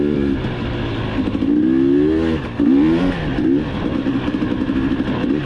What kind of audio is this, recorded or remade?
recorded